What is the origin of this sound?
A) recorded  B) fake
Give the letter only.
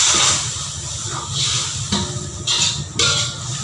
A